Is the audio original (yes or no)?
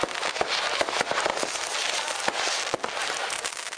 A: yes